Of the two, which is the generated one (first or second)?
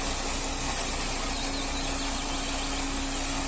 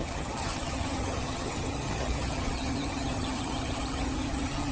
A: second